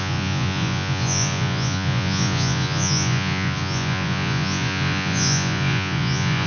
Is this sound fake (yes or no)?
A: yes